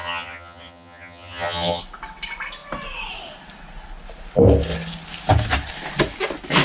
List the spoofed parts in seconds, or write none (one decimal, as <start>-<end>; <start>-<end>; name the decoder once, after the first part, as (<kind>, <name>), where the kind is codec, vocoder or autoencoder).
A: 0.0-1.8 (vocoder, HiFi-GAN)